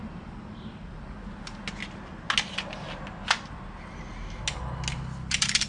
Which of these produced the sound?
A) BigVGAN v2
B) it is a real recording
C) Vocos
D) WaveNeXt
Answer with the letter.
B